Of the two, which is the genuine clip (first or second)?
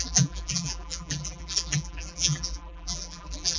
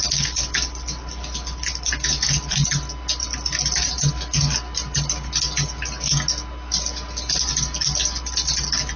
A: second